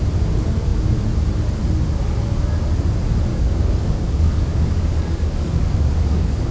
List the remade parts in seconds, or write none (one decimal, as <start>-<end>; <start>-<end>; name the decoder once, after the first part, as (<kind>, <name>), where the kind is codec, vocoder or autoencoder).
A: 3.3-6.5 (codec, DAC)